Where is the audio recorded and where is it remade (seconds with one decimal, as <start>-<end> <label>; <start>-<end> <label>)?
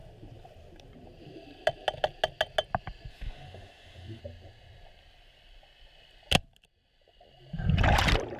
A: 0.0-3.1 recorded; 3.1-4.2 remade; 4.2-8.4 recorded